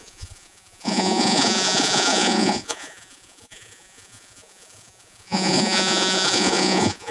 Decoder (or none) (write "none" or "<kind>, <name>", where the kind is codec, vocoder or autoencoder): vocoder, Vocos